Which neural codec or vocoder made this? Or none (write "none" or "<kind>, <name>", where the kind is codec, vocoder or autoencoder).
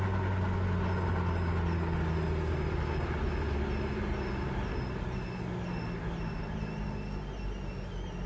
none